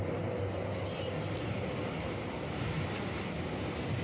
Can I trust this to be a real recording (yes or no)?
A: yes